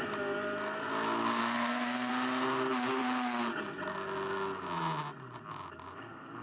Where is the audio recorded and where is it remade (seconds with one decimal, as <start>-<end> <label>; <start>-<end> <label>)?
0.0-1.4 recorded; 1.4-2.1 remade; 2.1-6.4 recorded